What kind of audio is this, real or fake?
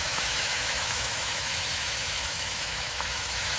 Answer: fake